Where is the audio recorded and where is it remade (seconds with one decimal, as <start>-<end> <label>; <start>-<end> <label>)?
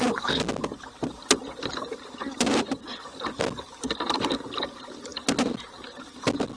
0.0-6.6 recorded